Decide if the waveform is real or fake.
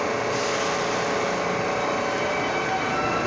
real